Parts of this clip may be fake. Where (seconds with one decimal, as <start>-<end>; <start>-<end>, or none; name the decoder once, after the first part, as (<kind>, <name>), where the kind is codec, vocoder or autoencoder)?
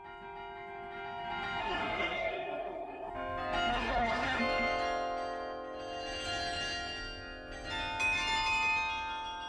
1.6-3.1 (codec, SNAC); 3.7-4.4